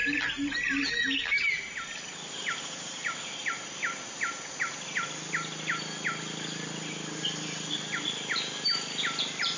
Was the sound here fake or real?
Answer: real